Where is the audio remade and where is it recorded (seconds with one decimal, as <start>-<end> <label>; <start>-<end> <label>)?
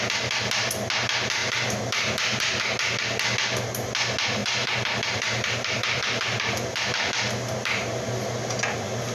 0.0-1.4 recorded; 1.4-2.6 remade; 2.6-4.4 recorded; 4.4-8.0 remade; 8.0-9.1 recorded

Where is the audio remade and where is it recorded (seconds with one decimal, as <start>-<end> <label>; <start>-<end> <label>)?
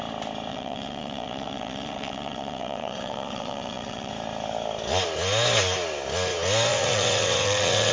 0.0-0.5 recorded; 0.5-4.1 remade; 4.1-6.7 recorded; 6.7-7.9 remade